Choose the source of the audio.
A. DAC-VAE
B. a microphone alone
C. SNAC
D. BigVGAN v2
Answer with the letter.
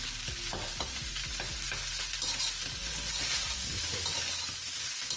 B